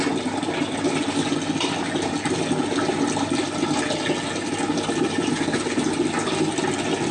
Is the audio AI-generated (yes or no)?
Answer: no